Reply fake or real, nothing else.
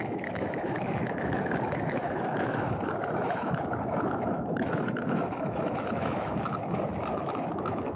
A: fake